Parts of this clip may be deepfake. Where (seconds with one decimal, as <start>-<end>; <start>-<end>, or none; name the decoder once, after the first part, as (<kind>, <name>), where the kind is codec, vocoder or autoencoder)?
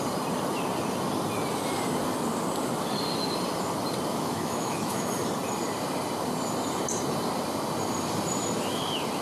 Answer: 4.1-5.1 (autoencoder, DAC-VAE)